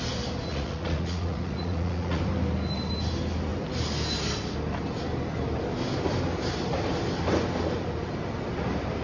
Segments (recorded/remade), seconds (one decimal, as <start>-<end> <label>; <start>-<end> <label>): 0.0-0.5 recorded; 0.5-2.2 remade; 2.2-9.0 recorded